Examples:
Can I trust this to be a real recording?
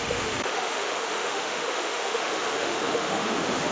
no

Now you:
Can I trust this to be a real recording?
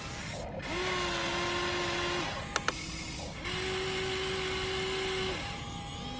yes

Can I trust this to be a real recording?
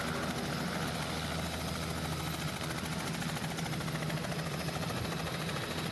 yes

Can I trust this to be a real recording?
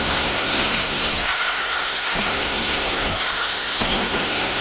no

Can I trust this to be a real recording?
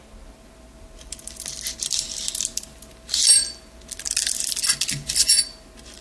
yes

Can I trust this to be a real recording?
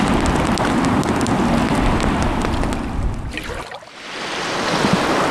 yes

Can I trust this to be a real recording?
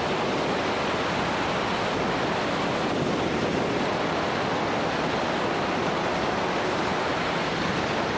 yes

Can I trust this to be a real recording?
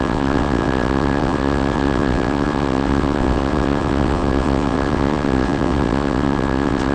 no